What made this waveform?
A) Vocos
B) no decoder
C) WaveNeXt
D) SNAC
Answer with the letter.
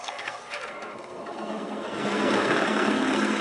D